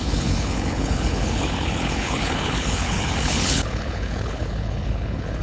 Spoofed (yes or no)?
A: yes